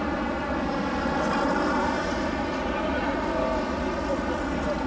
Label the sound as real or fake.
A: real